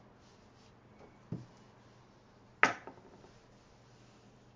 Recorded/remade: recorded